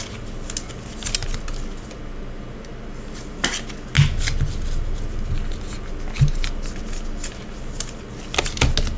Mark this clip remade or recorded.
recorded